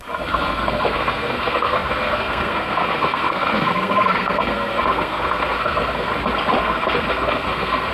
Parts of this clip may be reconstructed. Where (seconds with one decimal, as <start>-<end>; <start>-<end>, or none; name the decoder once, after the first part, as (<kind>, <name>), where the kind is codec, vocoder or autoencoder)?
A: 0.0-6.1 (codec, SNAC); 6.6-7.9